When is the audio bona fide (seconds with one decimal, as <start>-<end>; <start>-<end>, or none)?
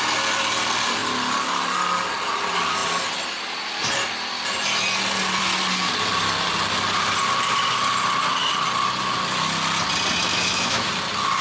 0.0-10.3; 10.9-11.4